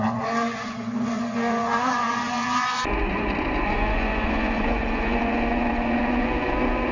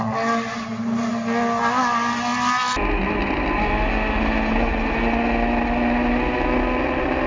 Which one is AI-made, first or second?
first